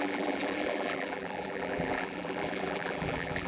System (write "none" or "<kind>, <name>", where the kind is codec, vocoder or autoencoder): vocoder, BigVGAN v2